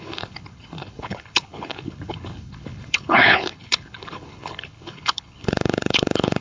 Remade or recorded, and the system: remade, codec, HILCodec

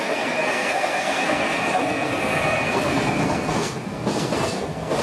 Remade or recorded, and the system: remade, codec, SNAC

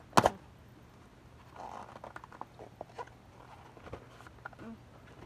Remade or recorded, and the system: recorded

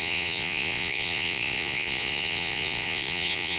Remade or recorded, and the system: remade, vocoder, Vocos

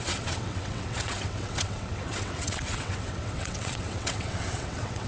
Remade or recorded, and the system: remade, vocoder, WaveNeXt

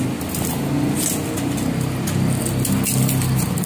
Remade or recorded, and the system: recorded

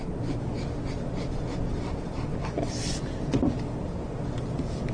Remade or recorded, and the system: recorded